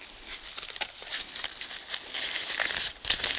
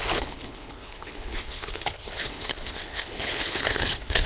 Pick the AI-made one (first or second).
second